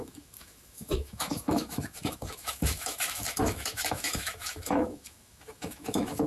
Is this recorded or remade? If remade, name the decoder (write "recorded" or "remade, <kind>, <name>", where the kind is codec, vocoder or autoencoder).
remade, autoencoder, DAC-VAE